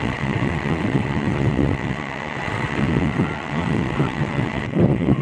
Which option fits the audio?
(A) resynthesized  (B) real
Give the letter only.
A